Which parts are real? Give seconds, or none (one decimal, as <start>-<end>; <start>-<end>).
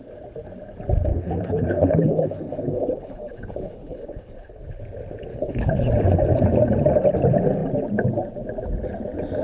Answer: 0.0-1.1; 4.6-5.3; 5.9-9.4